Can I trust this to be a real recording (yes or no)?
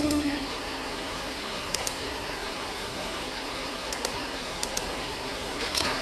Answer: no